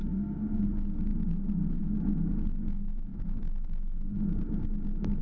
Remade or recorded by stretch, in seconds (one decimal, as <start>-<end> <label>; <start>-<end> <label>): 0.0-3.1 recorded; 3.1-4.1 remade; 4.1-5.2 recorded